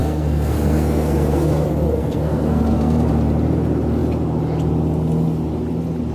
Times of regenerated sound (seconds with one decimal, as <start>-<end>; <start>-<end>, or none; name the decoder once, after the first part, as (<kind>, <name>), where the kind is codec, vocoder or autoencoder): 0.0-3.1 (codec, SNAC)

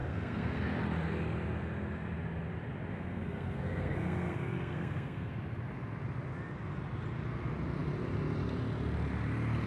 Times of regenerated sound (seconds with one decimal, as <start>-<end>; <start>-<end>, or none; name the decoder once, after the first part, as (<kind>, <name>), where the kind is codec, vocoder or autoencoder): 0.0-0.6 (codec, SNAC); 2.9-5.3